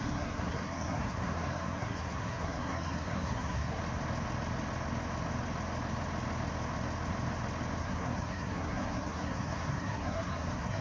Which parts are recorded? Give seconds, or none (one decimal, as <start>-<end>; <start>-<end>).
3.8-7.8